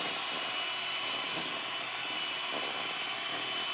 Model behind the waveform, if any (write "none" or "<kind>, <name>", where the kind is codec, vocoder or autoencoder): none